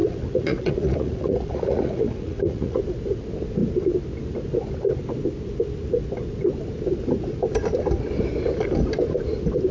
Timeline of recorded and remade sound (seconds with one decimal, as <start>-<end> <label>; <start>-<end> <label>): 0.0-2.8 remade; 2.8-9.7 recorded

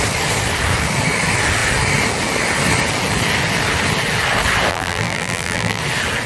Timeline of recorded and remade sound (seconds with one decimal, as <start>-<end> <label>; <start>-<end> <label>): 0.0-4.7 recorded; 4.7-5.8 remade; 5.8-6.3 recorded